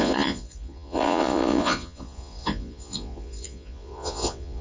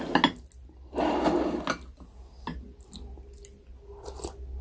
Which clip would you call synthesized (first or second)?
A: first